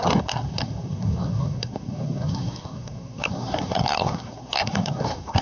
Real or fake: fake